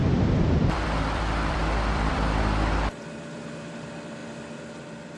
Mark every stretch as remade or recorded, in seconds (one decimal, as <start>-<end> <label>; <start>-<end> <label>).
0.0-5.2 remade